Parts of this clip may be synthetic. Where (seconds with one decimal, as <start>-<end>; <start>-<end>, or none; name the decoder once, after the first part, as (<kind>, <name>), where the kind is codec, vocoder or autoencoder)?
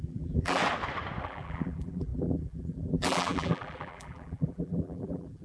0.0-0.6 (vocoder, BigVGAN v2); 1.2-5.4